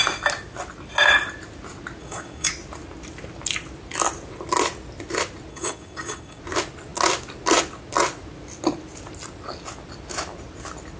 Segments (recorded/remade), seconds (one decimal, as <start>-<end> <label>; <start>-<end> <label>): 0.0-2.0 recorded; 2.0-2.5 remade; 2.5-5.5 recorded; 5.5-6.4 remade; 6.4-11.0 recorded